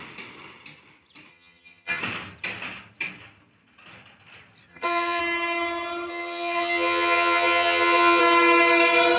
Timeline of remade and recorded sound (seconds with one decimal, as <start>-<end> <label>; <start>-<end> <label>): 0.0-1.3 recorded; 1.3-2.0 remade; 2.0-4.7 recorded; 4.7-5.2 remade; 5.2-6.1 recorded; 6.1-8.2 remade; 8.2-9.2 recorded